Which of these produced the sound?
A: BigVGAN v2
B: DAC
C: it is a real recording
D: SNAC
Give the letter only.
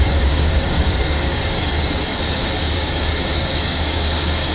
B